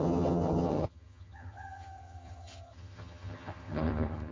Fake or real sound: fake